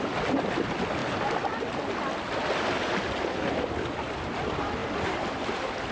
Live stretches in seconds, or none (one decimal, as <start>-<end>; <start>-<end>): 1.0-3.0